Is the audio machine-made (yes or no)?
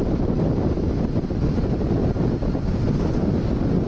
no